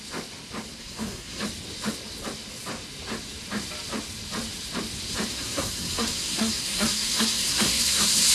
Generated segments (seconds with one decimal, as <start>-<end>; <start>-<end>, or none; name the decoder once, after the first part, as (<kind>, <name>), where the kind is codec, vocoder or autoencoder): 0.8-1.4 (codec, SNAC); 5.3-8.3